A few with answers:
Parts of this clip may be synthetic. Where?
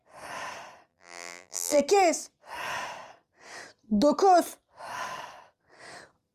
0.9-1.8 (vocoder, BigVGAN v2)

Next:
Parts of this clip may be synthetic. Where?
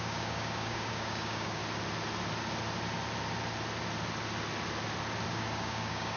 0.0-1.6 (codec, DAC); 5.3-6.2